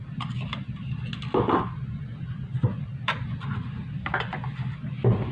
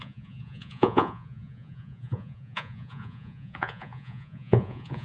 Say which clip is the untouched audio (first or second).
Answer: first